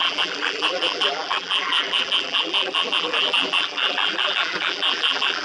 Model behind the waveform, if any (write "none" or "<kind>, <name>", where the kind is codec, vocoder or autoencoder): vocoder, BigVGAN v2